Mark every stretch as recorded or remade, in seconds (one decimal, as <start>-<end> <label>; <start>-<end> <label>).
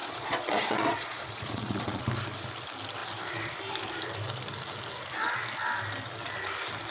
0.0-2.0 remade; 2.0-6.9 recorded